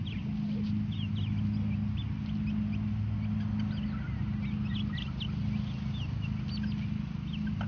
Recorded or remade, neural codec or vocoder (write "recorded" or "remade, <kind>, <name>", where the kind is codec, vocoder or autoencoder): recorded